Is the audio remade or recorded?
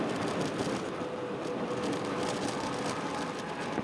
recorded